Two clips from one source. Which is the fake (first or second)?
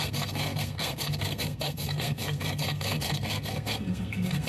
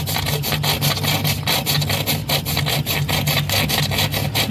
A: first